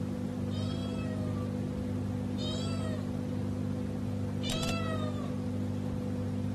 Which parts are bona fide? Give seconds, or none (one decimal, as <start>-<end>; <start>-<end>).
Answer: 0.0-6.5